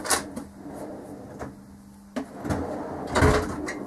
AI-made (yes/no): no